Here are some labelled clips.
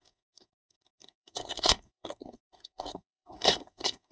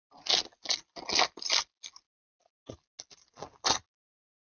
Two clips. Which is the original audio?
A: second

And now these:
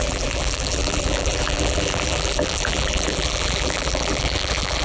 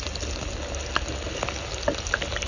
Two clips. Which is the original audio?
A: second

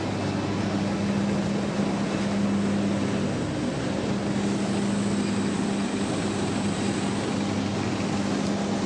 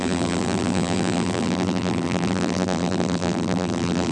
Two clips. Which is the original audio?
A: first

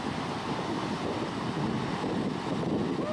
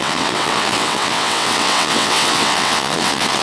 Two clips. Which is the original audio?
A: first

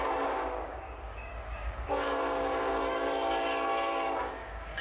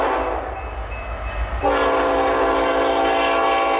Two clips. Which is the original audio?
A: second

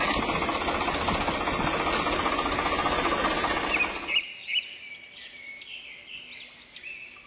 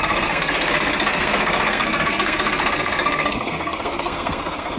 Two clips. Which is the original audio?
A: first